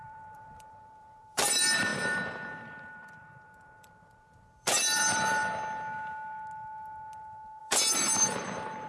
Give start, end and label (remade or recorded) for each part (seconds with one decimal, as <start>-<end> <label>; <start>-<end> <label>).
0.0-5.4 remade; 5.4-7.6 recorded; 7.6-8.9 remade